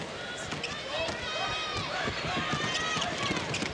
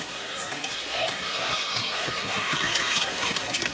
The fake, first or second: second